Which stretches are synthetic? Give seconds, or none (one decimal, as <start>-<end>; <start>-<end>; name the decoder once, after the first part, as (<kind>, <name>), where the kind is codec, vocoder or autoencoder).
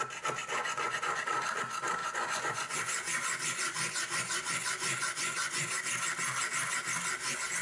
0.4-1.2 (vocoder, Vocos); 2.0-5.8